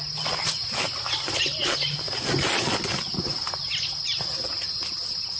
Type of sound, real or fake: real